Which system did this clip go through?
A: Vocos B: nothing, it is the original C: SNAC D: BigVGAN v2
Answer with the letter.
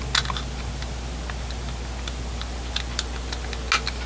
B